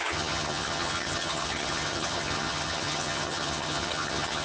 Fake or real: fake